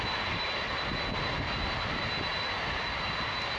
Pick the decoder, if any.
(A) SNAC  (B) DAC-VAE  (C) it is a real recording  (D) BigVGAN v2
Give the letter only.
C